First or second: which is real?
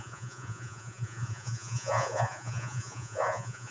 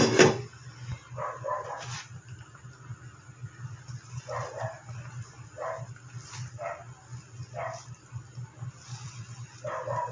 second